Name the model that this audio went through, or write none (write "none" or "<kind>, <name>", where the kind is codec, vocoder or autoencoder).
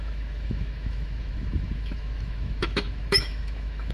autoencoder, DAC-VAE